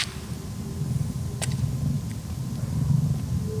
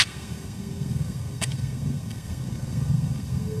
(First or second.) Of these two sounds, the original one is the first